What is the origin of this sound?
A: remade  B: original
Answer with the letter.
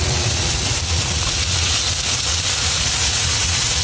A